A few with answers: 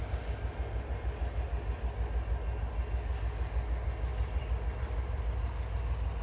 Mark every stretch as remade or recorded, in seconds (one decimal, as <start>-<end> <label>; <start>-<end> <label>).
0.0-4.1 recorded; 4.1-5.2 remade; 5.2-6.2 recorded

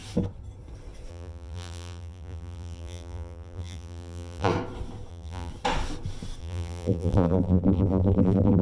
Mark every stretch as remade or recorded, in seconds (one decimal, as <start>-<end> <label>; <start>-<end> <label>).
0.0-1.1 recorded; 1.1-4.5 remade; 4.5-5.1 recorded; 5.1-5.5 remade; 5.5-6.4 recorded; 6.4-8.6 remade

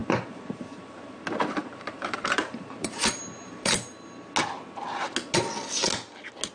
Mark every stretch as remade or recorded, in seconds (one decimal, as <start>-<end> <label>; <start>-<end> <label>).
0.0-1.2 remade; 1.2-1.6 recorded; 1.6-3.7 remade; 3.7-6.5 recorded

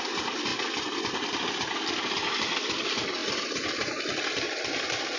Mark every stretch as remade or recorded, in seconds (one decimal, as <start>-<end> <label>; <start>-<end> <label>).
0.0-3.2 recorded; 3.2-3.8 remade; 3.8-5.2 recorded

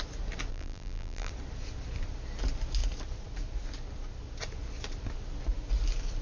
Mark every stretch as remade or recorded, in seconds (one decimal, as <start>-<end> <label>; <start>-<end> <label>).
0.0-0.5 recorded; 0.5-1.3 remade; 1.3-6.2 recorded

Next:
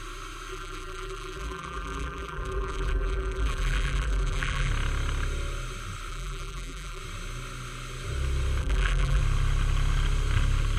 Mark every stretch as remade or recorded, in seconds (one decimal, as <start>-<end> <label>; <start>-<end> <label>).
0.0-0.5 recorded; 0.5-4.7 remade; 4.7-6.1 recorded; 6.1-7.0 remade; 7.0-8.6 recorded; 8.6-9.2 remade; 9.2-10.8 recorded

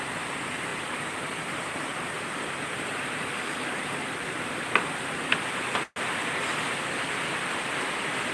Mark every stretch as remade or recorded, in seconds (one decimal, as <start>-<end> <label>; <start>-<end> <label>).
0.0-0.7 recorded; 0.7-5.4 remade; 5.4-8.3 recorded

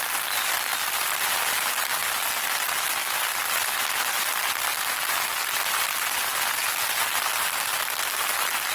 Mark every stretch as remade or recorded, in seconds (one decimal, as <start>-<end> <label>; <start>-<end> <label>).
0.0-8.7 recorded